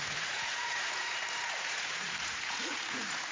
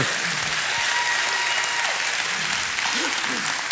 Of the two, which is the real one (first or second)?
second